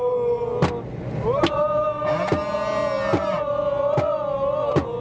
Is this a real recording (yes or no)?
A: yes